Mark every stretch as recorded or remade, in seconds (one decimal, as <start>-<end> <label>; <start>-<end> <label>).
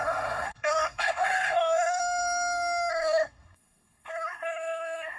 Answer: 0.0-2.0 remade; 2.0-2.9 recorded; 2.9-5.2 remade